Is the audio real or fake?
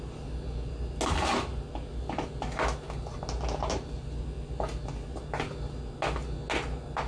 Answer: real